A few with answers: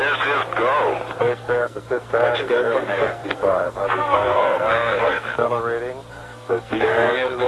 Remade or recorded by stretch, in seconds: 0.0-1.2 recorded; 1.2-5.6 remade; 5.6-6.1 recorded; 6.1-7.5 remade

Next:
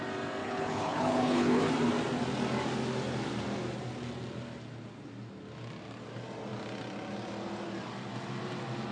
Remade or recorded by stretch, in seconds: 0.0-0.4 recorded; 0.4-1.6 remade; 1.6-8.9 recorded

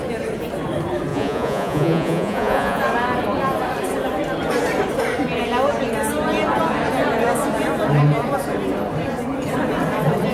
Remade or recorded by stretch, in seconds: 0.0-1.1 recorded; 1.1-2.8 remade; 2.8-10.3 recorded

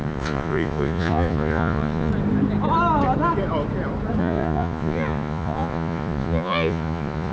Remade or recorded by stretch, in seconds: 0.0-2.1 remade; 2.1-4.2 recorded; 4.2-7.3 remade